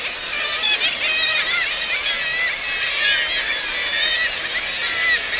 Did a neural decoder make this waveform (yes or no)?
no